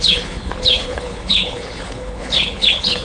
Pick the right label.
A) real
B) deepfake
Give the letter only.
B